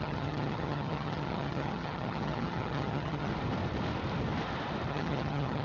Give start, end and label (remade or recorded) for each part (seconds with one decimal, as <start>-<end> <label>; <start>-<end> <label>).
0.0-3.3 remade; 3.3-4.9 recorded; 4.9-5.6 remade

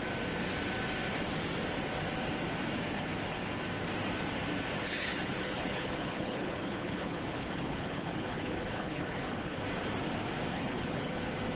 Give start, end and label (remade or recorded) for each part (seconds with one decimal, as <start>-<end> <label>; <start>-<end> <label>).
0.0-4.8 recorded; 4.8-9.6 remade; 9.6-10.5 recorded; 10.5-11.2 remade; 11.2-11.6 recorded

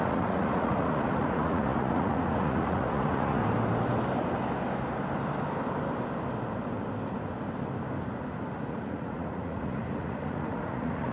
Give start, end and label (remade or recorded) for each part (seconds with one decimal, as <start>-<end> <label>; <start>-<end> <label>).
0.0-3.4 remade; 3.4-8.7 recorded; 8.7-11.1 remade

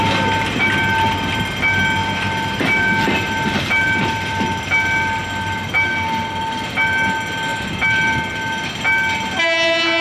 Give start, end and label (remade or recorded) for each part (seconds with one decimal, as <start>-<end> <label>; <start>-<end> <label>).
0.0-10.0 recorded

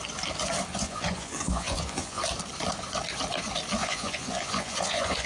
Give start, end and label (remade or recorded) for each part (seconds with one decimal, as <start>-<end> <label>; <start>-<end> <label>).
0.0-0.7 recorded; 0.7-2.2 remade; 2.2-3.8 recorded; 3.8-5.3 remade